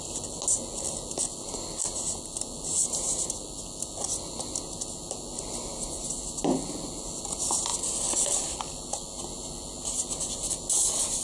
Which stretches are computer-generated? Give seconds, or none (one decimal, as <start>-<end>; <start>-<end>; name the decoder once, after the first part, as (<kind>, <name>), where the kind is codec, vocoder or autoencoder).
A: none